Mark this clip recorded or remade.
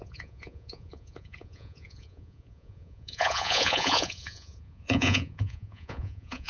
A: remade